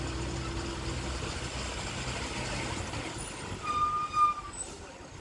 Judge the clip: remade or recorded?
recorded